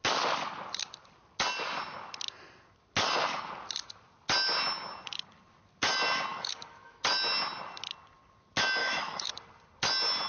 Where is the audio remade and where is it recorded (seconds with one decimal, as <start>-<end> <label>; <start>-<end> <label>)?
0.0-6.3 recorded; 6.3-7.0 remade; 7.0-8.8 recorded; 8.8-9.3 remade; 9.3-10.3 recorded